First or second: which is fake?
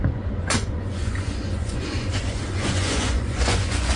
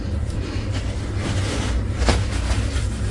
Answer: first